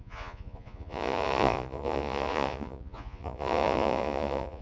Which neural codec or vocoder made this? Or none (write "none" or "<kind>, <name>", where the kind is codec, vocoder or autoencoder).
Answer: vocoder, Vocos